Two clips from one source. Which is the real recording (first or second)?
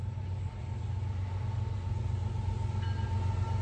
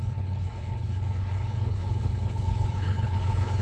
first